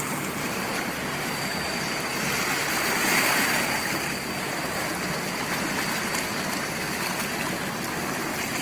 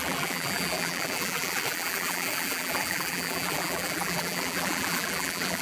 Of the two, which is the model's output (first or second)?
second